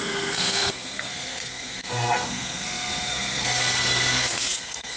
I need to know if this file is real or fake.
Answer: fake